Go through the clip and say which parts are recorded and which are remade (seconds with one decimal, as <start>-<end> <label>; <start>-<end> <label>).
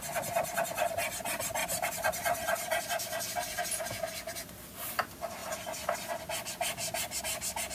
0.0-1.6 recorded; 1.6-2.8 remade; 2.8-7.7 recorded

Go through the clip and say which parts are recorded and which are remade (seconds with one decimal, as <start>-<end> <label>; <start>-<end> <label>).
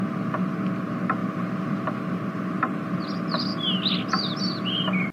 0.0-1.2 recorded; 1.2-3.0 remade; 3.0-5.1 recorded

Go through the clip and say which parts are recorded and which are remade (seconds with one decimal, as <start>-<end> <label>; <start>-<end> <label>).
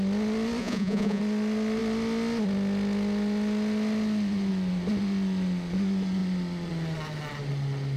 0.0-0.6 recorded; 0.6-1.2 remade; 1.2-8.0 recorded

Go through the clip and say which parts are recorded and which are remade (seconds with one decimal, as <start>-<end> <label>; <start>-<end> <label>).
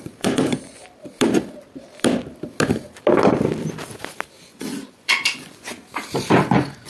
0.0-0.8 remade; 0.8-4.4 recorded; 4.4-5.7 remade; 5.7-6.4 recorded; 6.4-6.9 remade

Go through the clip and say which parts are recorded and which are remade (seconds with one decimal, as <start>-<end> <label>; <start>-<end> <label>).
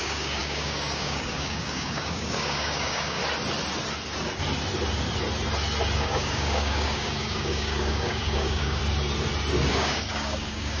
0.0-3.2 remade; 3.2-6.0 recorded; 6.0-8.8 remade; 8.8-9.7 recorded; 9.7-10.8 remade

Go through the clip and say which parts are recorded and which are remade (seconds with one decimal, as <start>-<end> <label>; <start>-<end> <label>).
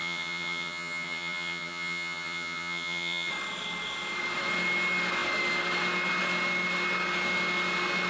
0.0-3.3 remade; 3.3-8.1 recorded